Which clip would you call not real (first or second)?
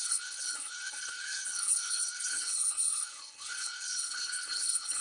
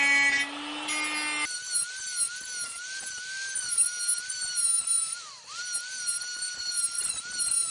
first